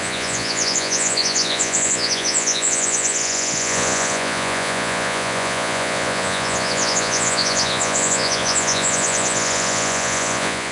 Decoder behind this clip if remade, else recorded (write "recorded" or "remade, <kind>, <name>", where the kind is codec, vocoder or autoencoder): remade, vocoder, Vocos